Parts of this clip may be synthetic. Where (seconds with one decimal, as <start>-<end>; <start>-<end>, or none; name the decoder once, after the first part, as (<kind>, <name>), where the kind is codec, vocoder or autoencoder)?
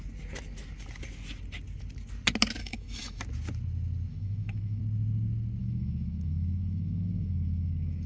2.6-3.2 (autoencoder, DAC-VAE); 4.1-4.8; 5.6-8.1